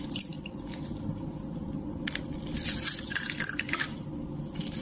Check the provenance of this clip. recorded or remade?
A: recorded